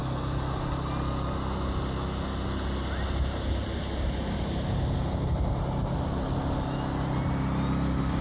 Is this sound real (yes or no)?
yes